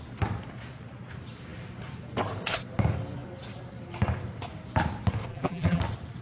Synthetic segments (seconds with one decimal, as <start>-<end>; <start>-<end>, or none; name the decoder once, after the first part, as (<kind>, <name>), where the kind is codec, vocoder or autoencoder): 5.3-5.8 (vocoder, BigVGAN v2)

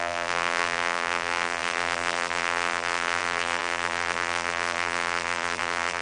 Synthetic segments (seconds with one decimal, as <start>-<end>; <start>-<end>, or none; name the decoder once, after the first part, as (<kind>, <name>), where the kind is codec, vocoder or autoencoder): 0.0-6.0 (vocoder, BigVGAN v2)